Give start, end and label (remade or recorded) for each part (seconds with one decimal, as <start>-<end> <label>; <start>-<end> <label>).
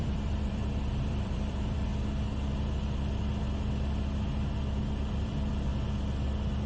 0.0-1.9 remade; 1.9-5.1 recorded; 5.1-5.7 remade; 5.7-6.7 recorded